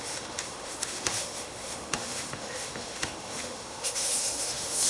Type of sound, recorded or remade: remade